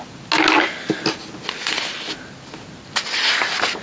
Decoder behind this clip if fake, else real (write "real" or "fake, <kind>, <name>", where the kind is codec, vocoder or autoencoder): real